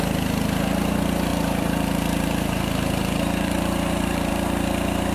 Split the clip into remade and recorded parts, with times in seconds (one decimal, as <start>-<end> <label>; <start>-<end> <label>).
0.0-1.3 recorded; 1.3-4.3 remade; 4.3-5.1 recorded